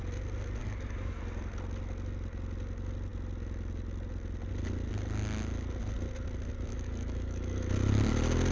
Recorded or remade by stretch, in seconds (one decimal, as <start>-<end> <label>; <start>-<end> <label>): 0.0-0.6 recorded; 0.6-1.2 remade; 1.2-6.7 recorded; 6.7-7.7 remade; 7.7-8.5 recorded